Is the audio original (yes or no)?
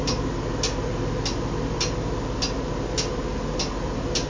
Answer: yes